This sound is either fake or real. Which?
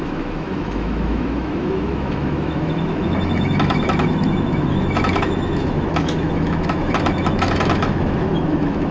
fake